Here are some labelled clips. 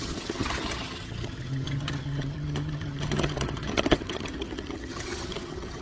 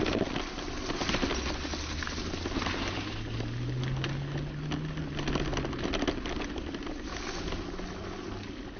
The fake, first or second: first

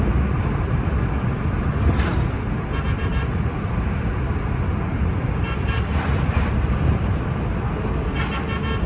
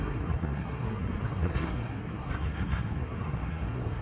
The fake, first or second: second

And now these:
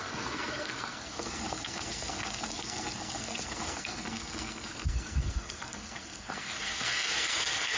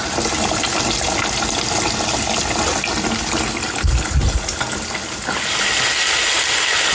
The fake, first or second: first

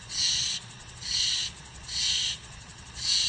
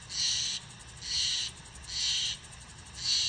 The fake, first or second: first